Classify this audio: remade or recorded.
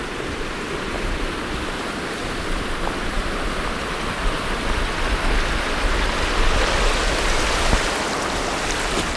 recorded